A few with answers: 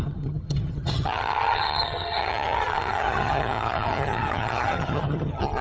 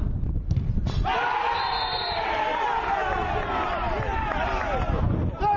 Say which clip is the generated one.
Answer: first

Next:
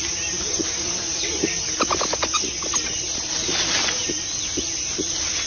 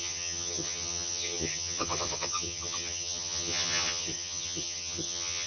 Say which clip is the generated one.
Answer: second